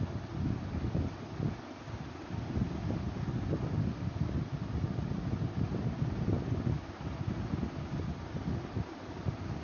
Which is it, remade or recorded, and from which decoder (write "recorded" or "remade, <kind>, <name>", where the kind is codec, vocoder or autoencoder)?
recorded